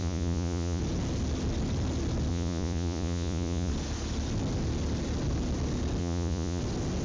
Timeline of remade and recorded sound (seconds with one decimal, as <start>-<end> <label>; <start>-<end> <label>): 0.0-0.8 remade; 0.8-2.3 recorded; 2.3-3.7 remade; 3.7-6.0 recorded; 6.0-6.6 remade; 6.6-7.0 recorded